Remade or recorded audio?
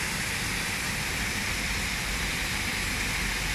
recorded